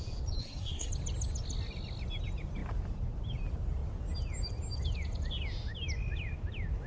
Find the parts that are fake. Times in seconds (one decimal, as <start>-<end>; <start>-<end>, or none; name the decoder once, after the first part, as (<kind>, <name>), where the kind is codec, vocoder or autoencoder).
0.4-0.9 (codec, SNAC)